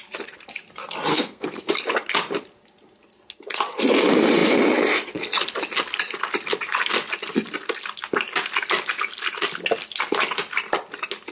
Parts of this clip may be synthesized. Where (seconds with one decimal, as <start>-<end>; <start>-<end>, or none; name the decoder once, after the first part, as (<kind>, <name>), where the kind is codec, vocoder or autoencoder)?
1.1-1.7 (codec, SNAC)